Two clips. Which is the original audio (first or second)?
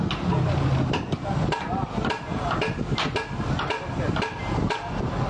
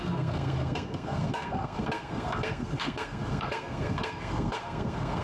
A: first